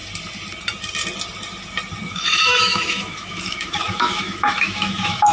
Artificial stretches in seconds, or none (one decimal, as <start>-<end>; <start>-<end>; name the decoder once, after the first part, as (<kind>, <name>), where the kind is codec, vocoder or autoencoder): 2.1-5.3 (autoencoder, DAC-VAE)